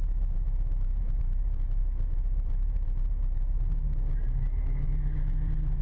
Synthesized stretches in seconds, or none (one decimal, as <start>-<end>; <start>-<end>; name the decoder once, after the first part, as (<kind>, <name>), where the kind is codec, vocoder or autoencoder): 0.0-1.2 (autoencoder, DAC-VAE)